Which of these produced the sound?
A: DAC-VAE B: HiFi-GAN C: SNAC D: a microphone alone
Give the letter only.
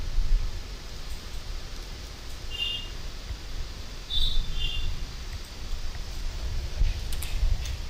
D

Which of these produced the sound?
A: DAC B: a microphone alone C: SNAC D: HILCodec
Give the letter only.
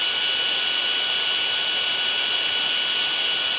B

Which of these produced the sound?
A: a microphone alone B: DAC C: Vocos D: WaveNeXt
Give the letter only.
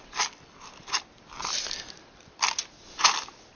A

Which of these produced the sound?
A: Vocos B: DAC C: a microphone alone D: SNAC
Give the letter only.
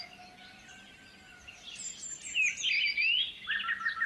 C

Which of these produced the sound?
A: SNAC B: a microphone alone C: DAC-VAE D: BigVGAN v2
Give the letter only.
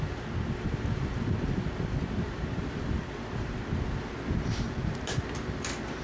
D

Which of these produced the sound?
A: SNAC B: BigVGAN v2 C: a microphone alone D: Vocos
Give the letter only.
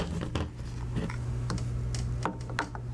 C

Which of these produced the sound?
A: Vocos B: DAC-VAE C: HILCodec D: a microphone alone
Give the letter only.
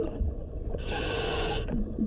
A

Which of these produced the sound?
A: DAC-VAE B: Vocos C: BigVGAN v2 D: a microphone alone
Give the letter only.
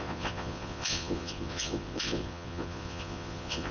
B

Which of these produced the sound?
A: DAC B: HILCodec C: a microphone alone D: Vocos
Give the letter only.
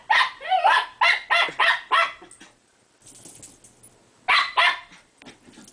C